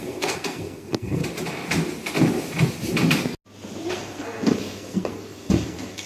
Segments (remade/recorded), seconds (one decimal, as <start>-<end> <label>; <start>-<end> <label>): 0.0-1.2 remade; 1.2-3.9 recorded; 3.9-6.1 remade